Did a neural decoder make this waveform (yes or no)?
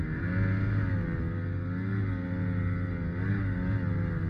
no